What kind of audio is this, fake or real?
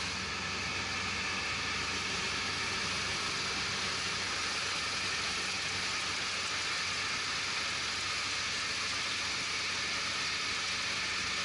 real